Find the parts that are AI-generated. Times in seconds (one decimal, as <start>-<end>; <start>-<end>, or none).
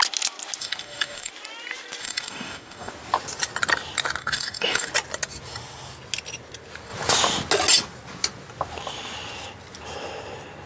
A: 0.6-1.3; 2.0-2.9; 4.2-4.9